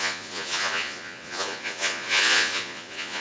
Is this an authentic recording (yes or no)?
no